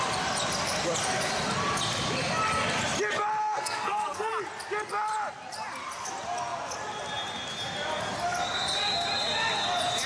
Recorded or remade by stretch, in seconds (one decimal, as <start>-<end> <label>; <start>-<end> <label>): 0.0-3.4 recorded; 3.4-4.3 remade; 4.3-10.1 recorded